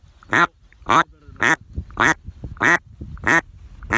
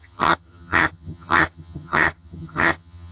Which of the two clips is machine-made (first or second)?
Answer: second